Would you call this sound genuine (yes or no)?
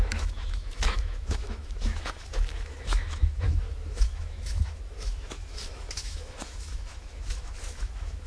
no